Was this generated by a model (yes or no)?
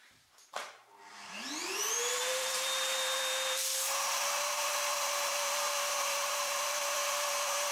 yes